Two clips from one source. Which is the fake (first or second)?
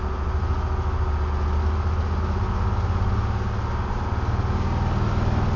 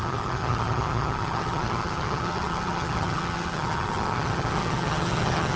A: second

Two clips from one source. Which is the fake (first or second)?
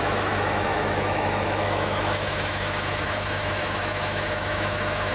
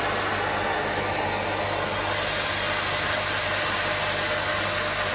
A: first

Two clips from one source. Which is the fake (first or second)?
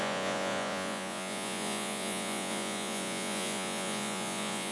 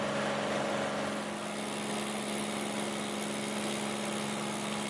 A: first